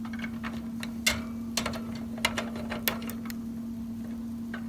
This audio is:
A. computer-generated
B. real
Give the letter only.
B